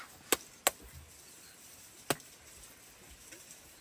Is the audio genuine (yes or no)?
yes